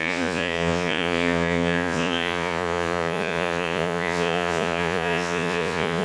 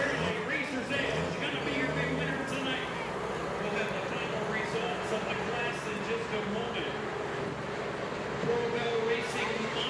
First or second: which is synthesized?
first